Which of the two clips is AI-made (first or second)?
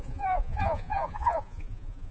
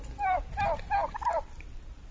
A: first